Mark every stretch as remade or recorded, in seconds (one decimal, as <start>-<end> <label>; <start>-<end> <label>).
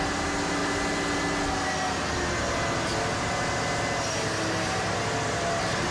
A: 0.0-5.9 recorded